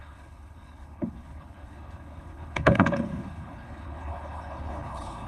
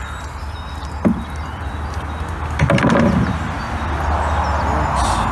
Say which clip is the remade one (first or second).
first